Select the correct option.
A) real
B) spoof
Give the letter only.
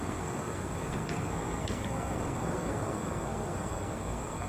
B